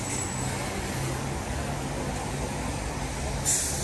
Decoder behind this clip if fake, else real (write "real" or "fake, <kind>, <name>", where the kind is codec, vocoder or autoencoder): real